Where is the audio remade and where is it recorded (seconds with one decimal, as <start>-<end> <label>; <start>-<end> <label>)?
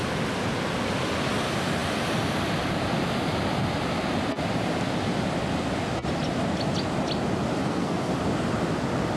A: 0.0-7.6 recorded; 7.6-8.1 remade; 8.1-9.2 recorded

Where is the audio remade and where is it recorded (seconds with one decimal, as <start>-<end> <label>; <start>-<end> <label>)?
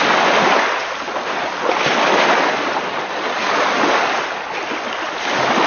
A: 0.0-5.7 recorded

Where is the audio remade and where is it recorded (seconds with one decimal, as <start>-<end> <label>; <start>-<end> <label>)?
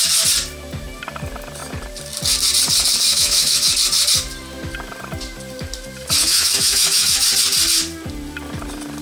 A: 0.0-3.1 recorded; 3.1-3.7 remade; 3.7-6.2 recorded; 6.2-7.2 remade; 7.2-9.0 recorded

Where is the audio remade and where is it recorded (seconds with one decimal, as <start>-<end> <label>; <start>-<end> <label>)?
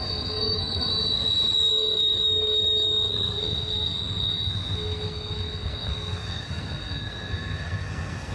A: 0.0-0.9 remade; 0.9-1.7 recorded; 1.7-8.3 remade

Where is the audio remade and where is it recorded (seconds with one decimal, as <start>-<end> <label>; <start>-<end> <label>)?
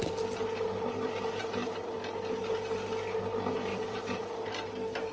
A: 0.0-3.7 recorded; 3.7-4.2 remade; 4.2-5.1 recorded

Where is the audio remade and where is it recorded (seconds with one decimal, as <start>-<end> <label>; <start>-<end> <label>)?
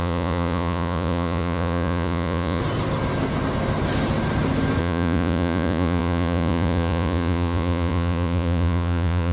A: 0.0-2.6 remade; 2.6-4.8 recorded; 4.8-9.3 remade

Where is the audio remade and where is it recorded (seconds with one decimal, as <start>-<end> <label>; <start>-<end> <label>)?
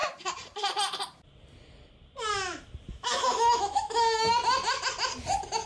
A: 0.0-2.9 recorded; 2.9-4.3 remade; 4.3-5.7 recorded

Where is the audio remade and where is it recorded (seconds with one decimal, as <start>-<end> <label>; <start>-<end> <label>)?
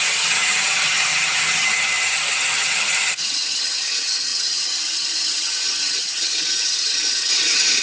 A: 0.0-7.8 remade